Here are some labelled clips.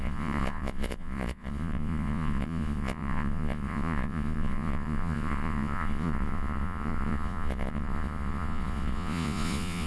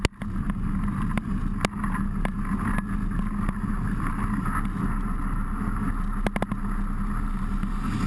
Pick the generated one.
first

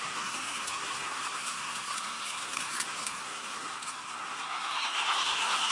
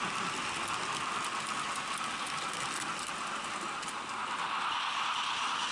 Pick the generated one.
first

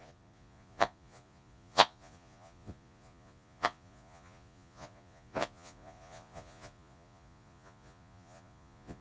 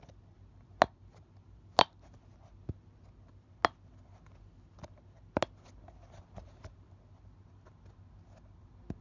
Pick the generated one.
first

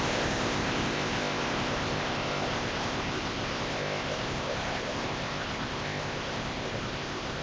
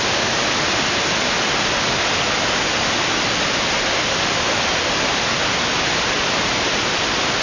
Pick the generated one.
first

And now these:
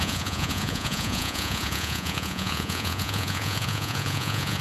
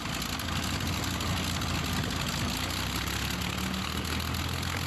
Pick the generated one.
first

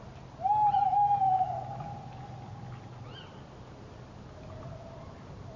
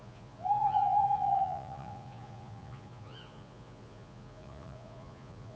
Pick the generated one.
second